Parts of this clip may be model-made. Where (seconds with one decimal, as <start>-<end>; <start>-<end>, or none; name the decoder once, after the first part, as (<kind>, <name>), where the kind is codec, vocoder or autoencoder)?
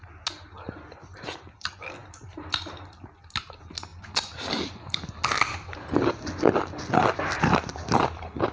none